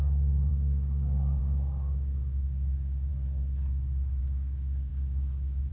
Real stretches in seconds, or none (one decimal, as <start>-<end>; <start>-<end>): 3.1-4.2